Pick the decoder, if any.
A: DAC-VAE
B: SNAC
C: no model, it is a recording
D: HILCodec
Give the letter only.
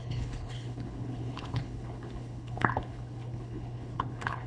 D